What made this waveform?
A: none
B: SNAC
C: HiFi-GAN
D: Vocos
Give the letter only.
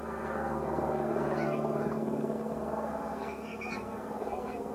B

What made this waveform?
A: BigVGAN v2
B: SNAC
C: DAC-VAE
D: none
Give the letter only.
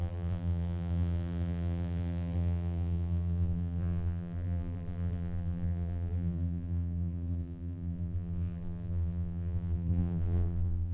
A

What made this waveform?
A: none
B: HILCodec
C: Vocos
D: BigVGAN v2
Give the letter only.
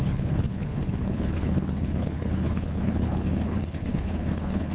B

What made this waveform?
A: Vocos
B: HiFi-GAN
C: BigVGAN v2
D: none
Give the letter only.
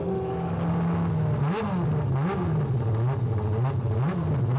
D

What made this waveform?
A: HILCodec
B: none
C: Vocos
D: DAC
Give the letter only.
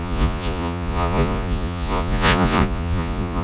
C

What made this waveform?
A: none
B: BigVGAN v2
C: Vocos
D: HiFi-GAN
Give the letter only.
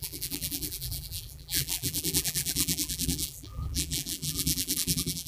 B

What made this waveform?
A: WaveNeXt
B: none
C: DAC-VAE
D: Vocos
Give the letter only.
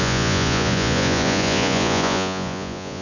D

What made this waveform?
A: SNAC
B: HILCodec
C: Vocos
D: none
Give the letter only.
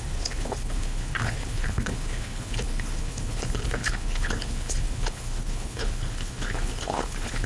B